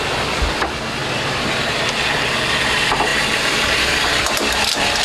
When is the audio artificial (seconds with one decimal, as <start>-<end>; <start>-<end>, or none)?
1.0-1.7; 3.1-4.2